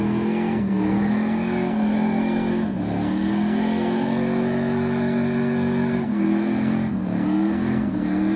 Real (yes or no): no